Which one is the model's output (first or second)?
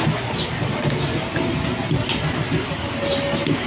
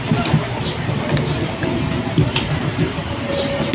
second